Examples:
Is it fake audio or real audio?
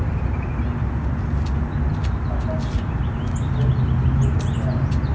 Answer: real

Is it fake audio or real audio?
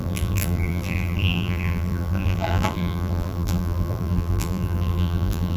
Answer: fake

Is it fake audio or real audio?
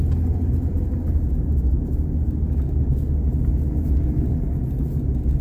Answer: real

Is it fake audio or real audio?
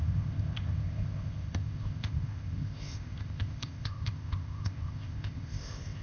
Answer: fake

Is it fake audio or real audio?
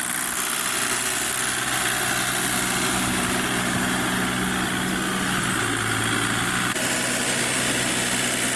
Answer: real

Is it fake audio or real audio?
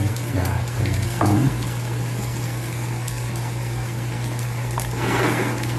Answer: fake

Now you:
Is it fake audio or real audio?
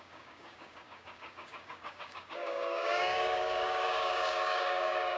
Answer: fake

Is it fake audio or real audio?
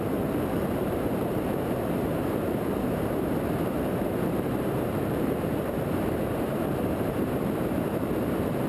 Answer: fake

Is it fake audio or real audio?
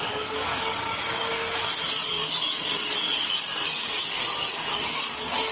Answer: fake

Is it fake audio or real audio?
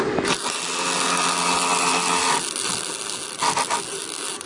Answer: real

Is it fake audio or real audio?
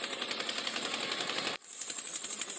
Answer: real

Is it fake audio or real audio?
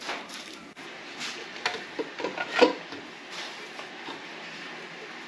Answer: real